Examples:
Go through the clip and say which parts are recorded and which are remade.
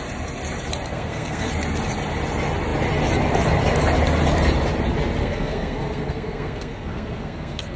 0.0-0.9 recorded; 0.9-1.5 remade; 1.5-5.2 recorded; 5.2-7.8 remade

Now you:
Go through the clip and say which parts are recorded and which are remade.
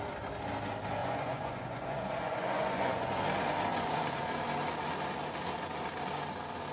0.0-1.0 recorded; 1.0-3.2 remade; 3.2-3.7 recorded; 3.7-4.2 remade; 4.2-6.7 recorded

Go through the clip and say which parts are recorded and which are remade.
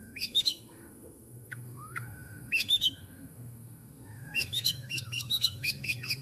0.0-6.2 remade